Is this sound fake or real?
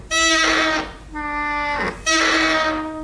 real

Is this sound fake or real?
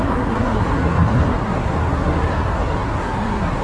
fake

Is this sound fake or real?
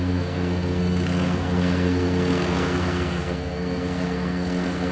fake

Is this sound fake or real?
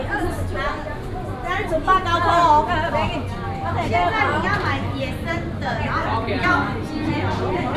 real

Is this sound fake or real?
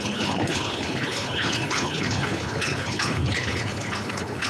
fake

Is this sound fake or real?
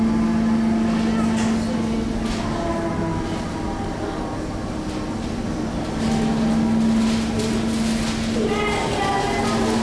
real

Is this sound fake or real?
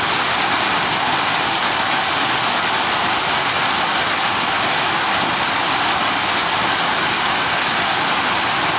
real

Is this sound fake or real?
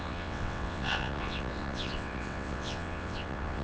fake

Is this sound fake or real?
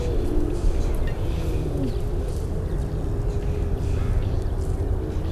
real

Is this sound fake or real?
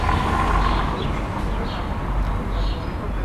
real